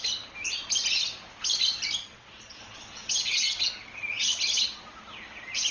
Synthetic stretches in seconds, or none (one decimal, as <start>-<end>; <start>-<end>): 2.0-2.6; 3.0-3.7

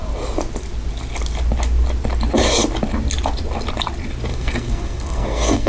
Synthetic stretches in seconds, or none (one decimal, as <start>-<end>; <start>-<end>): 4.3-5.7

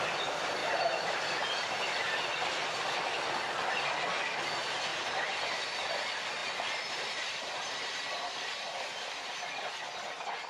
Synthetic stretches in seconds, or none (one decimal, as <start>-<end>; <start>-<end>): 0.6-1.4; 4.9-5.5; 6.4-8.0

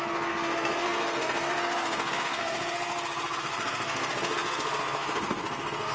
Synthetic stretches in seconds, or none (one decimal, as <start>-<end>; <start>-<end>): 0.0-2.9; 3.4-5.9

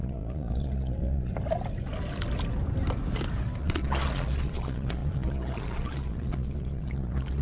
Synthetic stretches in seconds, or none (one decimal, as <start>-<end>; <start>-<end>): 0.0-1.3; 3.6-7.4

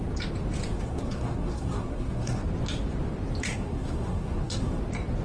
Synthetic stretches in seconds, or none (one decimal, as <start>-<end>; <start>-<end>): 0.7-2.4; 3.4-4.8

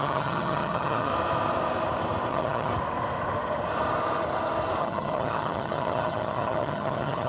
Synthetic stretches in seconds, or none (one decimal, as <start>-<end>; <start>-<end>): 0.0-1.1; 2.3-2.7; 4.8-7.3

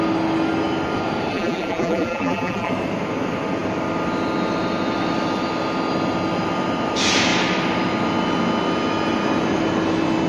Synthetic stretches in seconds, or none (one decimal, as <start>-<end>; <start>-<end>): 1.3-2.7